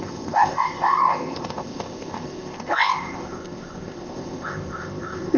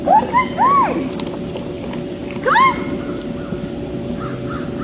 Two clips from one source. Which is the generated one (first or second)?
first